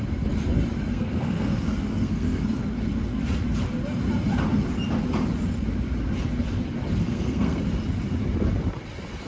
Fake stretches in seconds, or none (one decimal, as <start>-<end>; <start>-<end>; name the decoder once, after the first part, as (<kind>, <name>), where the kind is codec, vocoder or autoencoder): 0.9-2.6 (codec, SNAC); 7.0-7.6